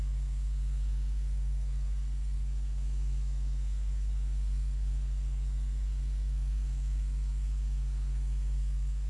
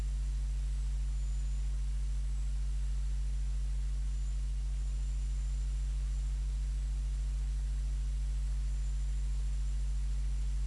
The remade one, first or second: first